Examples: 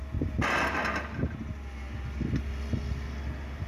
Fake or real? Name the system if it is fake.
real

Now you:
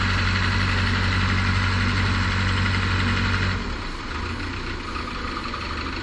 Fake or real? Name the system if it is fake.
real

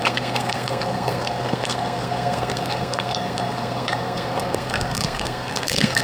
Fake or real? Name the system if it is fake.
fake, codec, SNAC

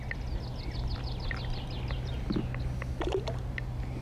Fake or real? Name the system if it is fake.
real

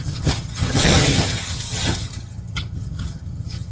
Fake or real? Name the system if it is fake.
fake, vocoder, HiFi-GAN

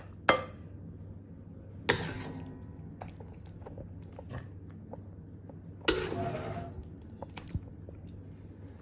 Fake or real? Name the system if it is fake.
real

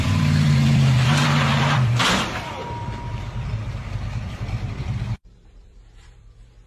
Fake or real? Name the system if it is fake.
fake, vocoder, BigVGAN v2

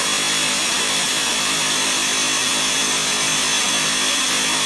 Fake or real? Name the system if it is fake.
fake, vocoder, BigVGAN v2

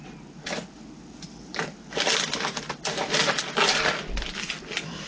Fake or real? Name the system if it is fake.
real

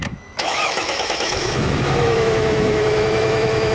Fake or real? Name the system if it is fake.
fake, autoencoder, DAC-VAE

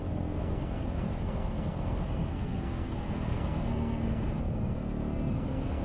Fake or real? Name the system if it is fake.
fake, codec, SNAC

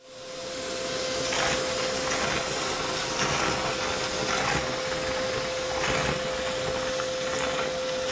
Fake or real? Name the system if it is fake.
real